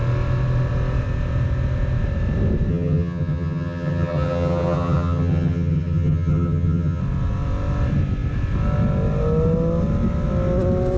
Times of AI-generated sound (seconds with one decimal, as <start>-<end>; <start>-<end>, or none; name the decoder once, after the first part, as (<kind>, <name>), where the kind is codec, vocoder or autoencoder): 2.7-7.0 (vocoder, HiFi-GAN)